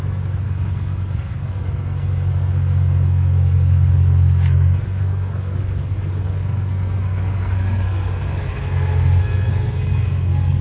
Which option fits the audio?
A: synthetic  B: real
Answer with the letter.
A